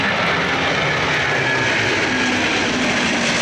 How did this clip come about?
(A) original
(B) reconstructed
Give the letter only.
A